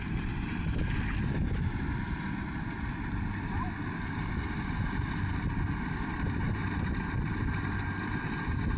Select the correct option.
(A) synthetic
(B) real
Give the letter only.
A